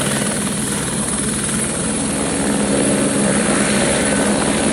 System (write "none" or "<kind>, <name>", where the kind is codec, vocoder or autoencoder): none